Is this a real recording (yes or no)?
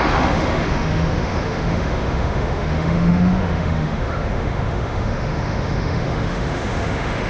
no